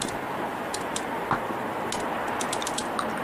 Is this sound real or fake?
real